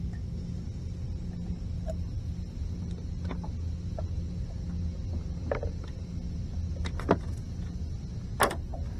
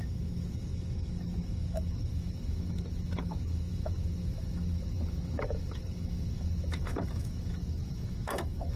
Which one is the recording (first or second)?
first